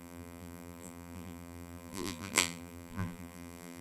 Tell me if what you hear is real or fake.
fake